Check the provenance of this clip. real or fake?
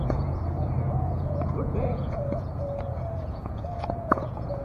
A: fake